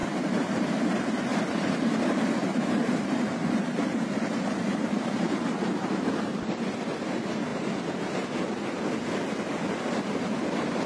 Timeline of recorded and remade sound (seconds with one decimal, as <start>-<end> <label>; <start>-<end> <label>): 0.0-0.7 remade; 0.7-2.4 recorded; 2.4-6.5 remade; 6.5-10.9 recorded